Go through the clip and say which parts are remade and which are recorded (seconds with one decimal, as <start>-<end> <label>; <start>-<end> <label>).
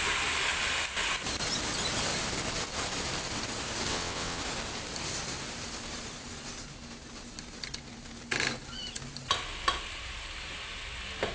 0.0-3.9 recorded; 3.9-4.4 remade; 4.4-11.3 recorded